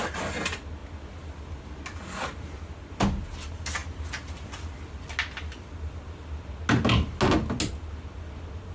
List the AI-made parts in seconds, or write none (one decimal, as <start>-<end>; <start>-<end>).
none